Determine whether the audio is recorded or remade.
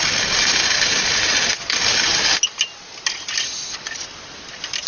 recorded